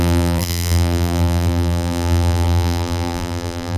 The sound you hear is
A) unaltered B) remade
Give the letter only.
B